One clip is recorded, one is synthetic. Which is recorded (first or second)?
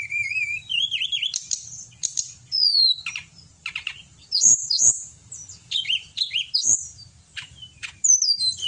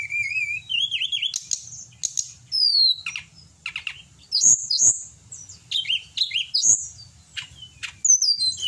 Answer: second